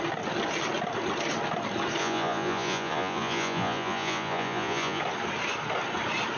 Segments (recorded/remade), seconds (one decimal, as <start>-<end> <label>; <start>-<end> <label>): 0.0-2.0 recorded; 2.0-5.0 remade; 5.0-6.4 recorded